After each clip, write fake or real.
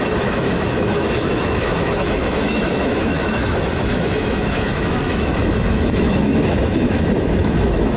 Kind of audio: fake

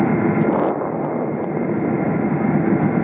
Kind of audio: real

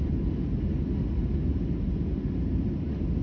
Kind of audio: real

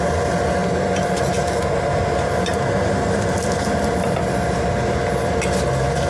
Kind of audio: real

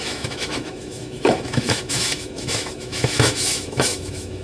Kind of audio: fake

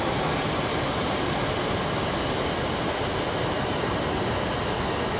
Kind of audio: real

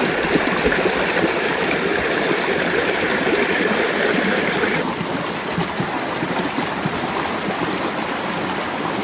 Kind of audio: fake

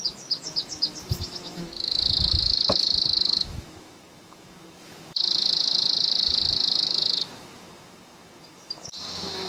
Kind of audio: fake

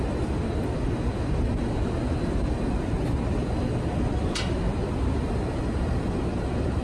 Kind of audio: real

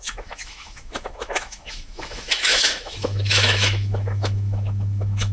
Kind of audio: fake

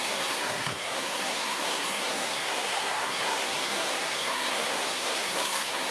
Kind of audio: fake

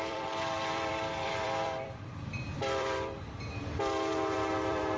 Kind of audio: fake